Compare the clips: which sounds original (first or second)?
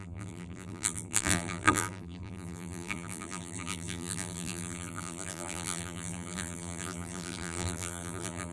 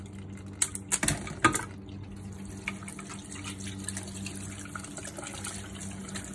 second